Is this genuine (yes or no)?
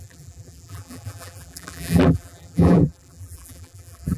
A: no